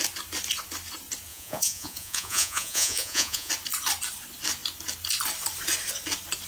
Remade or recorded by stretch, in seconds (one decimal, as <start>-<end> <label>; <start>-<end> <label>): 0.0-1.3 recorded; 1.3-3.5 remade; 3.5-6.5 recorded

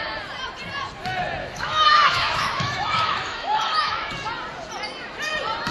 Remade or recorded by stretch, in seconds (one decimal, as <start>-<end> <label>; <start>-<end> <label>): 0.0-1.4 recorded; 1.4-4.1 remade; 4.1-5.7 recorded

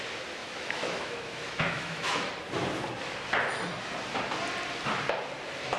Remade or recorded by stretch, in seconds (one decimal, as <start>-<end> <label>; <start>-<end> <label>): 0.0-0.4 recorded; 0.4-2.3 remade; 2.3-5.8 recorded

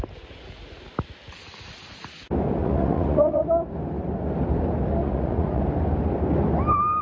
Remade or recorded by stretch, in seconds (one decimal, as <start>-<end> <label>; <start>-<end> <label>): 0.0-2.6 recorded; 2.6-3.4 remade; 3.4-5.0 recorded; 5.0-5.6 remade; 5.6-7.0 recorded

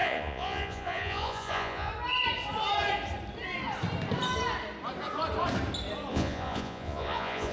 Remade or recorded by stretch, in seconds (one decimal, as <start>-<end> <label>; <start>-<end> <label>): 0.0-1.9 remade; 1.9-6.1 recorded; 6.1-7.5 remade